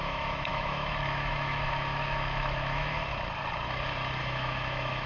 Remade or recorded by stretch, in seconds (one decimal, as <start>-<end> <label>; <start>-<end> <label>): 0.0-3.0 remade; 3.0-4.2 recorded; 4.2-5.1 remade